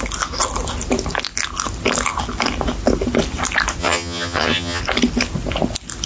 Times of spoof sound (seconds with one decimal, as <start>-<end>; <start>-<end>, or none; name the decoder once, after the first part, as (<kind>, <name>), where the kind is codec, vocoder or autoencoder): 3.8-4.8 (vocoder, HiFi-GAN)